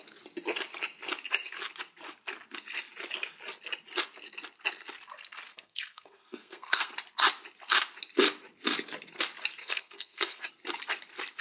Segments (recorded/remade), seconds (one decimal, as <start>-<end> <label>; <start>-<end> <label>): 0.0-5.5 recorded; 5.5-6.9 remade; 6.9-9.6 recorded; 9.6-10.5 remade; 10.5-11.4 recorded